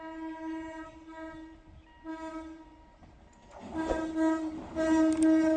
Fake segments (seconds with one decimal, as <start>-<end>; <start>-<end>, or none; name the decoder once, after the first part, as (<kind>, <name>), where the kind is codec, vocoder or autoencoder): none